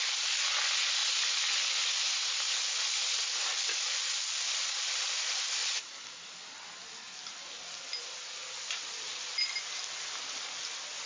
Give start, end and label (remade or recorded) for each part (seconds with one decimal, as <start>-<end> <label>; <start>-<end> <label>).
0.0-11.1 recorded